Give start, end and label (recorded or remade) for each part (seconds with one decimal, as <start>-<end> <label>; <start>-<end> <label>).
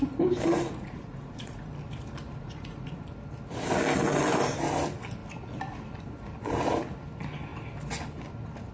0.0-0.5 recorded; 0.5-1.7 remade; 1.7-2.4 recorded; 2.4-3.0 remade; 3.0-8.7 recorded